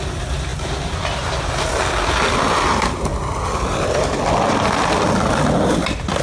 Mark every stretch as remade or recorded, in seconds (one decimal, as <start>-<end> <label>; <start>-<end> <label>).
0.0-0.5 remade; 0.5-2.5 recorded; 2.5-3.1 remade; 3.1-5.1 recorded; 5.1-6.2 remade